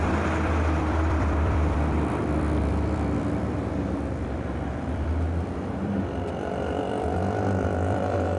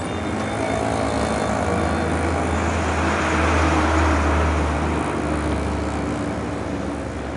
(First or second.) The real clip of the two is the second